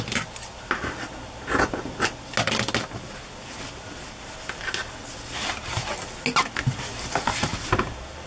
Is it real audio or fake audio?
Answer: real